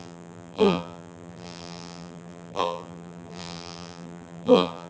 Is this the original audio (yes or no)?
no